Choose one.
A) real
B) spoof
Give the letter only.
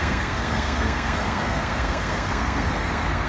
B